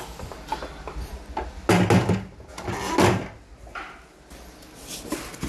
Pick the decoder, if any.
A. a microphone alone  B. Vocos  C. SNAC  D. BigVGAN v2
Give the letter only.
A